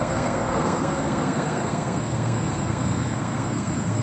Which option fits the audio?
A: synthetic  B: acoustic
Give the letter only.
A